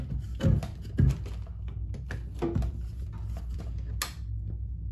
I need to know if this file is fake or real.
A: real